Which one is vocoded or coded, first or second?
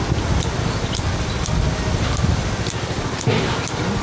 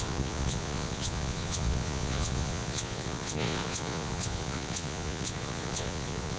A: second